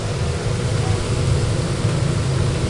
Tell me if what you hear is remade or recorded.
recorded